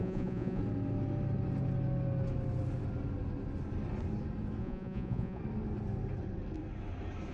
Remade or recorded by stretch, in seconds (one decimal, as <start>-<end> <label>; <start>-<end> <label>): 0.0-0.6 remade; 0.6-4.6 recorded; 4.6-5.4 remade; 5.4-7.3 recorded